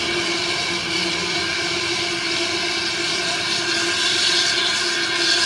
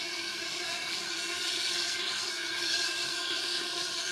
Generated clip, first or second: second